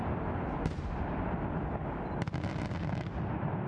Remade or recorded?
recorded